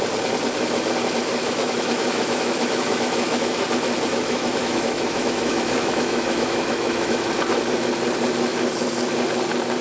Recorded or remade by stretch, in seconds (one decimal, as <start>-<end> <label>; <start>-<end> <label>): 0.0-1.4 recorded; 1.4-3.6 remade; 3.6-4.1 recorded; 4.1-7.3 remade; 7.3-9.8 recorded